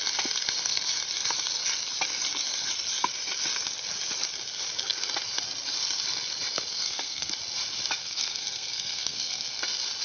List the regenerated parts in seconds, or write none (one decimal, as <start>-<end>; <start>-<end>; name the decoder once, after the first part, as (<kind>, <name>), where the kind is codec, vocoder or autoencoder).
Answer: 6.7-7.3 (codec, SNAC); 8.0-9.6